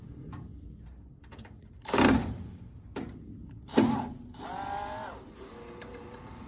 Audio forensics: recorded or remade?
recorded